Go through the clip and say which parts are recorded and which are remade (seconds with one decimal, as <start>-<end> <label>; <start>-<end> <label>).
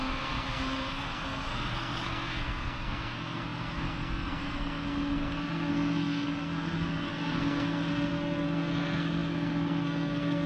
0.0-10.5 remade